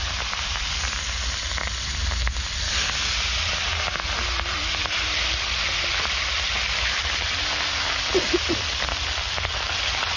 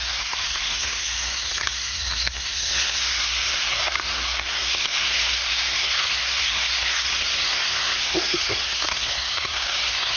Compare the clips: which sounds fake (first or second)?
second